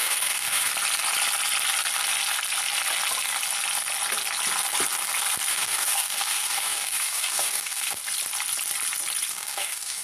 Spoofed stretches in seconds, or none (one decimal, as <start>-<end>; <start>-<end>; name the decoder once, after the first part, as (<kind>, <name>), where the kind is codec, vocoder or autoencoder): 0.0-0.7 (codec, DAC); 5.5-8.0; 9.3-10.0